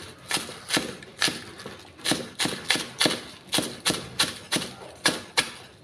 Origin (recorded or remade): recorded